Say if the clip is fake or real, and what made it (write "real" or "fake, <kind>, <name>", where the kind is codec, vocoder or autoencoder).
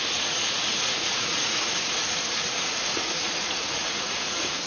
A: fake, vocoder, Vocos